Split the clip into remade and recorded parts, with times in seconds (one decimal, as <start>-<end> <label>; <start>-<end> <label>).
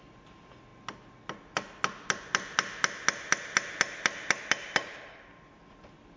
0.0-6.2 recorded